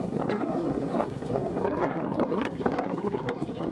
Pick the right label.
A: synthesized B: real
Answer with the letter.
A